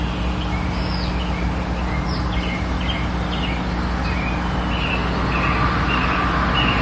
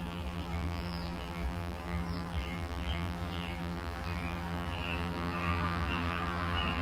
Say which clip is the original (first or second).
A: first